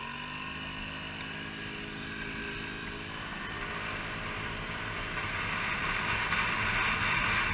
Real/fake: real